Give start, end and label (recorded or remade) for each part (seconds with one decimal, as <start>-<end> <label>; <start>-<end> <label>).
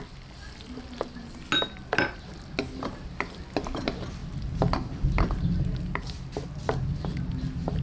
0.0-7.8 recorded